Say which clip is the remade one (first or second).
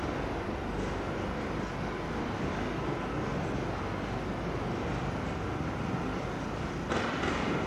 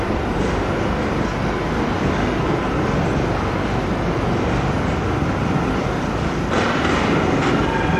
second